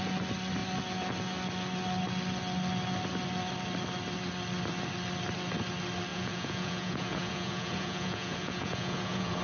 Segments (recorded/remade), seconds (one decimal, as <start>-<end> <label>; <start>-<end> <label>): 0.0-6.1 recorded; 6.1-9.4 remade